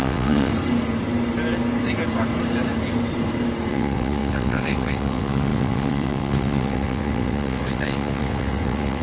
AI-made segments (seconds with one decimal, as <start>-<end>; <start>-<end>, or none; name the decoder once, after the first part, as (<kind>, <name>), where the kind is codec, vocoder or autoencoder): 0.0-0.5 (vocoder, WaveNeXt); 3.7-9.0